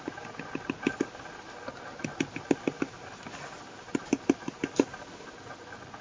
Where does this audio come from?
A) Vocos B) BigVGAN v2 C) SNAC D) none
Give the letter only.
D